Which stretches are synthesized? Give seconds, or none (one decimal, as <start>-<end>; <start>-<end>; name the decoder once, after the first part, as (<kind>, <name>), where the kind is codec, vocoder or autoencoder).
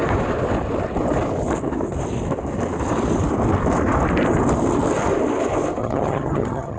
5.8-6.8 (vocoder, HiFi-GAN)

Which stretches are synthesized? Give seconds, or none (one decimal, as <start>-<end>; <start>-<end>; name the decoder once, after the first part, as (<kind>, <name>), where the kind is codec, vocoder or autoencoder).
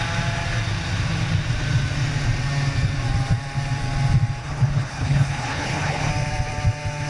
4.4-6.1 (codec, HILCodec)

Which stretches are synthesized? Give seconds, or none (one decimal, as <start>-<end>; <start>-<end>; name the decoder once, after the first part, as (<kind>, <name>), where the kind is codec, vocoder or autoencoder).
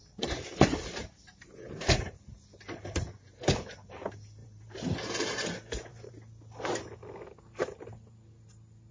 0.0-2.1 (vocoder, BigVGAN v2); 4.4-6.1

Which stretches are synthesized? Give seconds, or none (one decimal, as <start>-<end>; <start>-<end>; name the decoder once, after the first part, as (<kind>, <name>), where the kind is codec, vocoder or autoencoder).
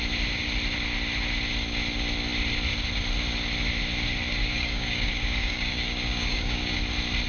4.4-6.8 (codec, DAC)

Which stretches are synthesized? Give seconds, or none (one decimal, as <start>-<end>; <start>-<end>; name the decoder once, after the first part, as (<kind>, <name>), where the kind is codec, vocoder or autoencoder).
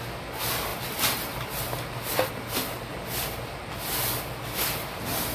none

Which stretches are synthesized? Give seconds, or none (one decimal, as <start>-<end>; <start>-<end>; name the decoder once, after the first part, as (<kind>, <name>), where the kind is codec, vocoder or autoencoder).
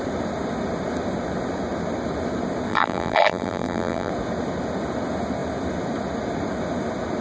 2.7-4.1 (vocoder, BigVGAN v2)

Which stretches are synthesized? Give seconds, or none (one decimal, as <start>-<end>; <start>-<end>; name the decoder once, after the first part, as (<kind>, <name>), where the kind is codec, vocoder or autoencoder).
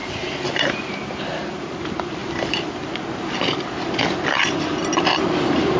0.0-2.2 (vocoder, BigVGAN v2)